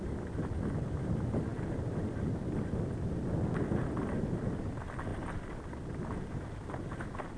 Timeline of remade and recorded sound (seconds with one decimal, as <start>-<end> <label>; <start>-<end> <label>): 0.0-1.5 recorded; 1.5-3.2 remade; 3.2-5.1 recorded; 5.1-5.9 remade; 5.9-7.4 recorded